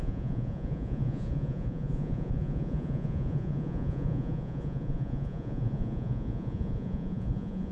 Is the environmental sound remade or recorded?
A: remade